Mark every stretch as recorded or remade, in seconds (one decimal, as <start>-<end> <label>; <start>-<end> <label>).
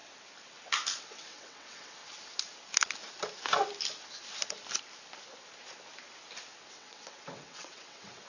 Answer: 0.0-1.0 recorded; 1.0-2.0 remade; 2.0-6.7 recorded; 6.7-8.3 remade